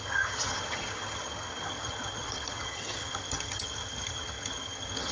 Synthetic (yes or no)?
yes